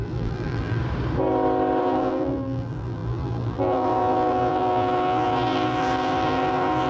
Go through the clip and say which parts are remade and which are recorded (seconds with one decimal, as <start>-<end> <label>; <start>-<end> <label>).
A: 0.0-0.8 remade; 0.8-1.8 recorded; 1.8-6.9 remade